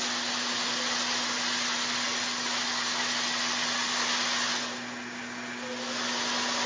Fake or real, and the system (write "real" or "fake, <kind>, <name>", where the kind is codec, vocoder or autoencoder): real